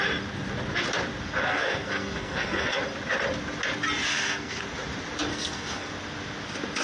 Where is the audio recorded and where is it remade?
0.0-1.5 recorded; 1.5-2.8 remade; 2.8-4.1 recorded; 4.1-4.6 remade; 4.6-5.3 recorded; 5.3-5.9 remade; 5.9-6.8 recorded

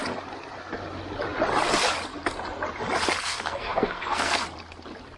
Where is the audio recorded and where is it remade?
0.0-3.2 recorded; 3.2-4.4 remade; 4.4-5.2 recorded

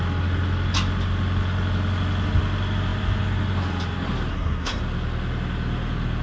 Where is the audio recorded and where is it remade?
0.0-4.3 recorded; 4.3-4.8 remade; 4.8-6.2 recorded

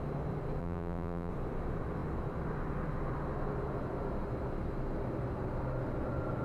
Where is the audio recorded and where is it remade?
0.0-0.6 recorded; 0.6-1.3 remade; 1.3-6.4 recorded

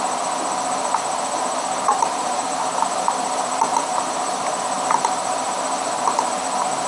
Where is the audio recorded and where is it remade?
0.0-1.9 recorded; 1.9-2.7 remade; 2.7-3.7 recorded; 3.7-4.6 remade; 4.6-6.9 recorded